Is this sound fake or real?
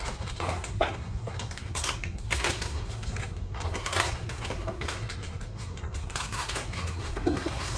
fake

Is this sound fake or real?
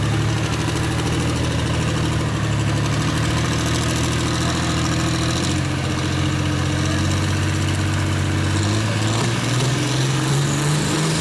real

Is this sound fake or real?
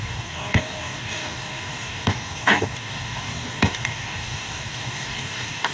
fake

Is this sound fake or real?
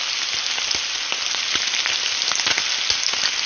real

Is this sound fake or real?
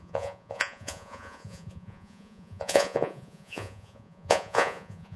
fake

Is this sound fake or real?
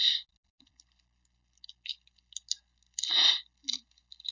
real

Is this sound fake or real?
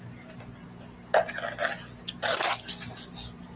real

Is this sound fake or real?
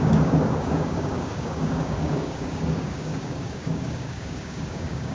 fake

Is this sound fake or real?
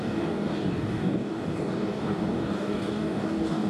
fake